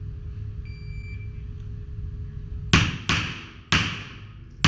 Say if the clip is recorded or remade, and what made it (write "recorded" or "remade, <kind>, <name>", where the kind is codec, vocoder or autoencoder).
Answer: recorded